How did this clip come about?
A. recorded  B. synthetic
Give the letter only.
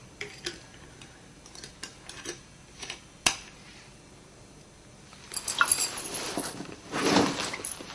A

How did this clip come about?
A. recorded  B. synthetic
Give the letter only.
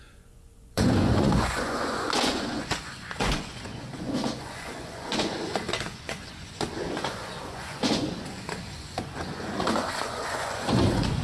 B